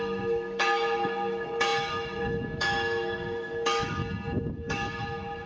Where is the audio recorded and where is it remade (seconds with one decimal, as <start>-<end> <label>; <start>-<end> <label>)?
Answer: 0.0-4.0 remade; 4.0-4.5 recorded; 4.5-5.5 remade